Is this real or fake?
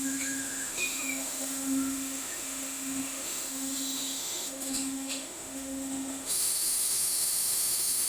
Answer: fake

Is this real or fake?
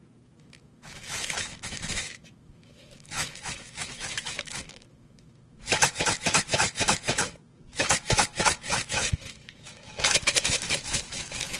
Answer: fake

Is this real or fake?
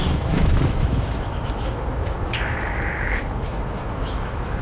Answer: fake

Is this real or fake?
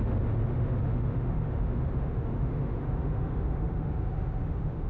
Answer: fake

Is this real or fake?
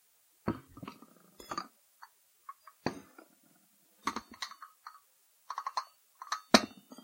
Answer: real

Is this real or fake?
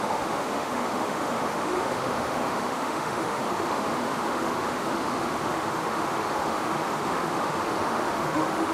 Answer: fake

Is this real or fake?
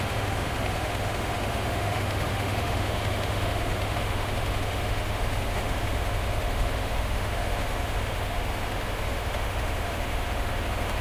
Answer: fake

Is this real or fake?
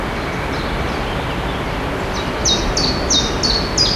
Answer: real